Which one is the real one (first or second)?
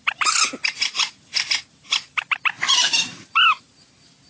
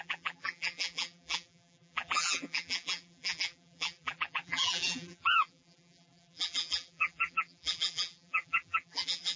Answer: first